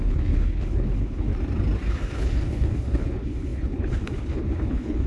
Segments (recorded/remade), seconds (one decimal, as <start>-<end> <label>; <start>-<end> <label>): 0.0-1.3 remade; 1.3-1.9 recorded; 1.9-5.1 remade